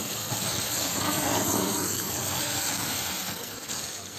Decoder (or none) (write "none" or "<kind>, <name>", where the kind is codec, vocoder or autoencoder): codec, SNAC